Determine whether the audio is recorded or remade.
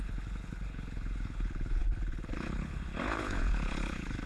remade